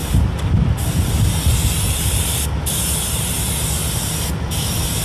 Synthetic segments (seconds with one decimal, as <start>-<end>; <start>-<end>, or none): none